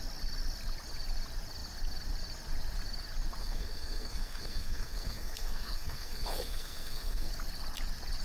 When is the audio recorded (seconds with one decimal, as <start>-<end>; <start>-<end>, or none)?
0.0-3.4; 7.3-8.2

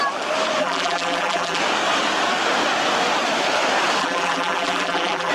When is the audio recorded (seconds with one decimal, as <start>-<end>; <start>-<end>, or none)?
0.0-0.6; 1.6-4.0

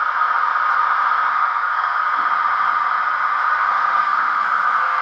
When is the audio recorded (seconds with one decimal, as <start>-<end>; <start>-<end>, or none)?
0.0-1.3; 2.0-3.4

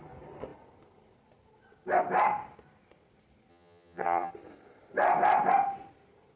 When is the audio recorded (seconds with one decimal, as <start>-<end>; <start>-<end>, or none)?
0.0-3.5; 4.3-6.4